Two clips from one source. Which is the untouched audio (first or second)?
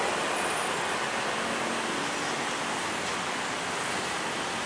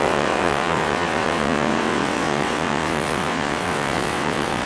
first